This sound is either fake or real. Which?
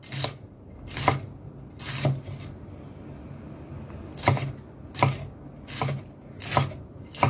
real